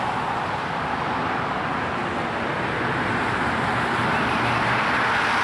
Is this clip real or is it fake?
real